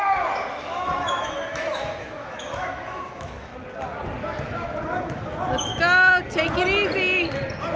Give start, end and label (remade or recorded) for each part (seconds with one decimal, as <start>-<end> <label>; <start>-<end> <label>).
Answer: 0.0-3.5 remade; 3.5-4.2 recorded; 4.2-5.7 remade; 5.7-7.8 recorded